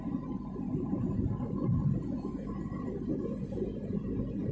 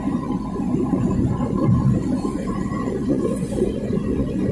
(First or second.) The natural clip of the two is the first